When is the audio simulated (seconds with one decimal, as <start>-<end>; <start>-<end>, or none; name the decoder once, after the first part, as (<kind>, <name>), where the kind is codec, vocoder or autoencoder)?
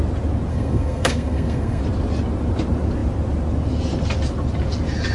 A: 0.5-1.8 (codec, SNAC)